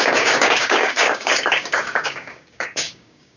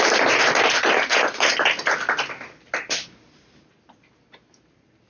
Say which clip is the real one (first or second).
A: second